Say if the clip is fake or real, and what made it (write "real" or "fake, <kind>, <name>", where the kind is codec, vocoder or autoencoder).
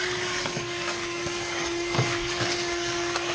fake, codec, DAC